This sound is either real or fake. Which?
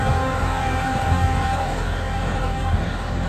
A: fake